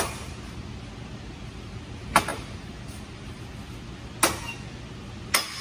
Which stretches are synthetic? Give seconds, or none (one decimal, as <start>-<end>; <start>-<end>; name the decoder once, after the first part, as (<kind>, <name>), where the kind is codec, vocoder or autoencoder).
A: 2.3-3.4 (vocoder, BigVGAN v2)